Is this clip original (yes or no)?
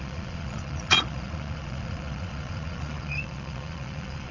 no